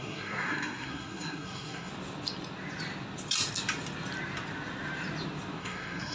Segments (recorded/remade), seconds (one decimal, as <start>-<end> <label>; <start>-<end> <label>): 0.0-1.9 remade; 1.9-5.6 recorded; 5.6-6.1 remade

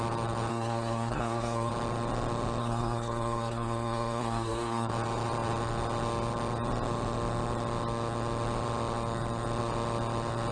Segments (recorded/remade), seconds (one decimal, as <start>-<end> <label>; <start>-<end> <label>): 0.0-0.5 recorded; 0.5-1.7 remade; 1.7-2.6 recorded; 2.6-4.9 remade; 4.9-10.5 recorded

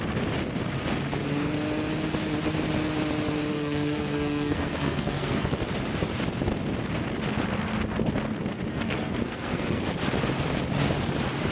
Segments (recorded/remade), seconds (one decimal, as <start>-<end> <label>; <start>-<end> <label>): 0.0-3.5 recorded; 3.5-5.6 remade; 5.6-8.7 recorded; 8.7-9.8 remade; 9.8-11.5 recorded

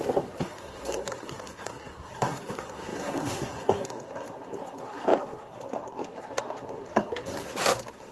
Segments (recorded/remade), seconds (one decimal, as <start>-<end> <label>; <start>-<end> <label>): 0.0-8.1 remade

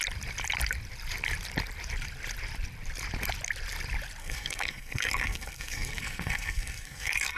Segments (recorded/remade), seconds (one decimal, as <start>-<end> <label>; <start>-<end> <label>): 0.0-4.2 recorded; 4.2-7.4 remade

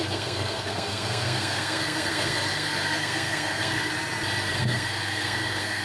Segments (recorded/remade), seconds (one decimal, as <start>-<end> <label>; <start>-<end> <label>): 0.0-3.9 remade; 3.9-4.5 recorded; 4.5-5.8 remade

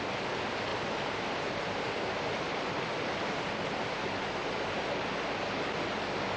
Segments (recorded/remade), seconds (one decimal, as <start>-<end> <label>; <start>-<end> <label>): 0.0-6.4 recorded

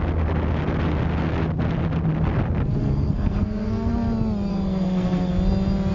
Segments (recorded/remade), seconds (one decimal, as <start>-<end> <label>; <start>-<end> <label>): 0.0-2.8 recorded; 2.8-3.9 remade; 3.9-4.5 recorded; 4.5-5.3 remade; 5.3-5.9 recorded